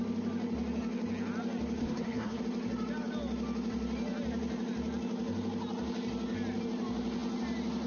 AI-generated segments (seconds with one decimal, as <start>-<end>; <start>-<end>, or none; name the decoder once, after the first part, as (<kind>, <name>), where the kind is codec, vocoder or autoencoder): 1.8-2.4 (codec, SNAC)